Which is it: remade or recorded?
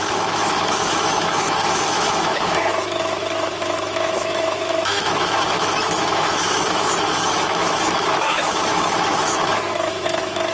remade